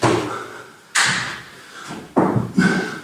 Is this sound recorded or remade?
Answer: recorded